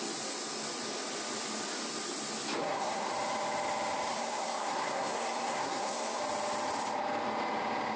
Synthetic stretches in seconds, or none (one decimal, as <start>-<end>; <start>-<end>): 2.6-3.1; 4.1-6.2